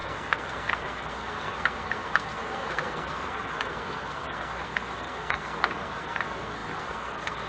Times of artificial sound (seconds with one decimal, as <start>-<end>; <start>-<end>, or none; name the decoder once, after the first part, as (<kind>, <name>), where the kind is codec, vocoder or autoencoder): 0.0-7.5 (codec, SNAC)